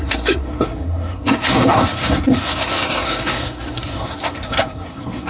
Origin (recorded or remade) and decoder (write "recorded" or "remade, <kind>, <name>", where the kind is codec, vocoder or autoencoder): remade, codec, SNAC